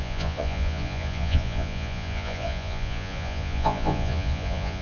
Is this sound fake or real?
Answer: fake